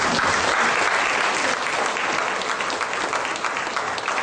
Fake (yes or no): no